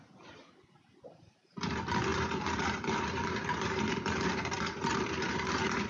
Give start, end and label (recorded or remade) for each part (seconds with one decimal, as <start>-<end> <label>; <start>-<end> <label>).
0.0-5.9 remade